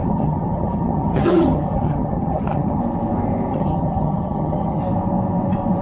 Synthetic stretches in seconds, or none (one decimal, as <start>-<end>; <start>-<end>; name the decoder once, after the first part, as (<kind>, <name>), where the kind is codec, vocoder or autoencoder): 0.0-2.8 (vocoder, HiFi-GAN); 3.5-4.8